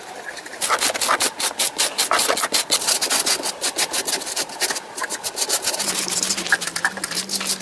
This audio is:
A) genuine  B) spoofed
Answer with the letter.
A